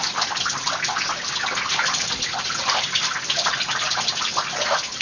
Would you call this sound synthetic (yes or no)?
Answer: no